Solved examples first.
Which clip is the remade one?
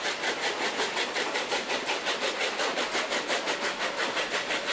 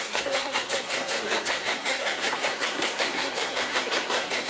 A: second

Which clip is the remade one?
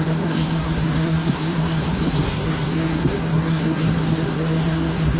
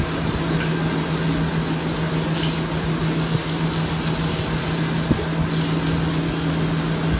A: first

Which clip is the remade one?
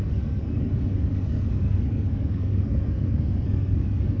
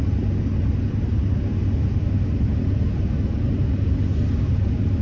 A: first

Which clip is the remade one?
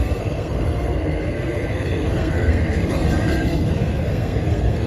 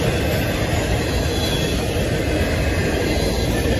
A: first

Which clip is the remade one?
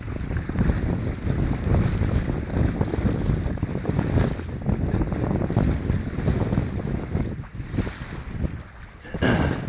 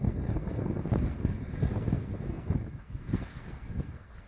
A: second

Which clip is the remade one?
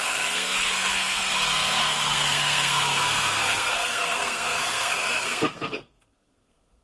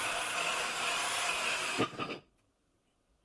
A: first